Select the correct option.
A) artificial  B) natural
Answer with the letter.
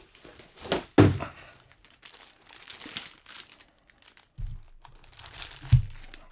B